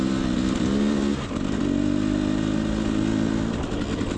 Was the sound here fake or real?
real